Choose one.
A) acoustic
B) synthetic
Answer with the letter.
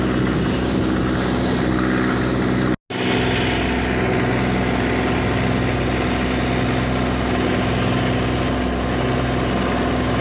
A